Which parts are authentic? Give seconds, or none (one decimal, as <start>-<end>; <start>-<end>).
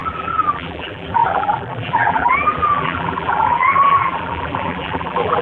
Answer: none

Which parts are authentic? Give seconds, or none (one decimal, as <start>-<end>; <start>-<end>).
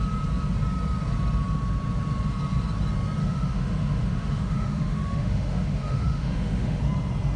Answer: 0.0-3.2; 6.8-7.4